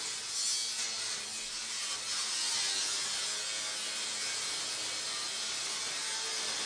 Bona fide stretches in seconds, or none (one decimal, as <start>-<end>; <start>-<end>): 0.0-6.7